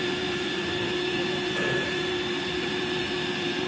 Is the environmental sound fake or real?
fake